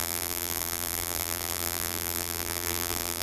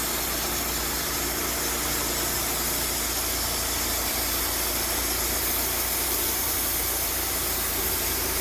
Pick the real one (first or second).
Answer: second